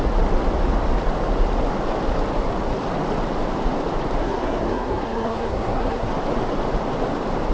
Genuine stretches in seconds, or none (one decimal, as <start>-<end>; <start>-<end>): 0.0-4.2; 6.1-7.5